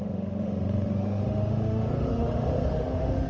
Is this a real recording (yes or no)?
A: no